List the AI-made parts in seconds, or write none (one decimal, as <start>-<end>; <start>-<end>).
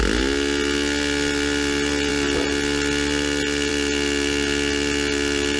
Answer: none